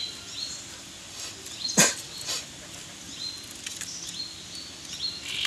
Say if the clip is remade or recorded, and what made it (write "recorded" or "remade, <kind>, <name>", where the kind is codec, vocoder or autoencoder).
recorded